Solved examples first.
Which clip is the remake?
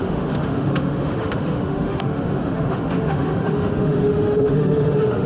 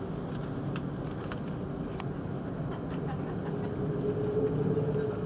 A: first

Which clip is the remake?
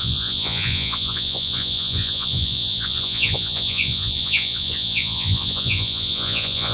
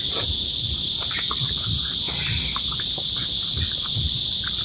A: first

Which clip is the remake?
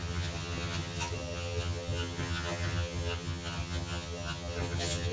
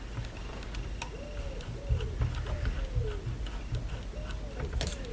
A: first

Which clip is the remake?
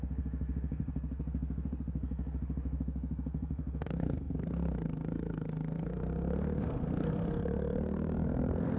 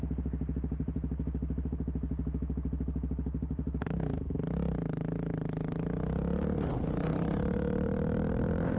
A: first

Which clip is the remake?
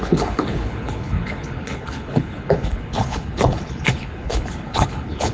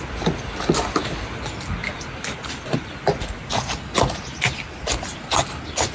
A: first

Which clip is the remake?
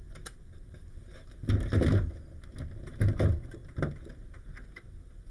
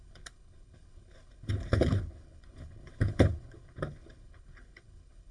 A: second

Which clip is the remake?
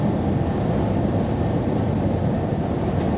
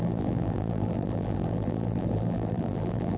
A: second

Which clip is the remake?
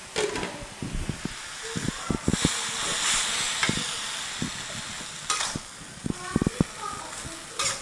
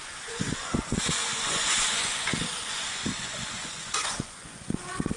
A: second